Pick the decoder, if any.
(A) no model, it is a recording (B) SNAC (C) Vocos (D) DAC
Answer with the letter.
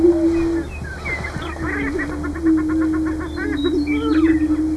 A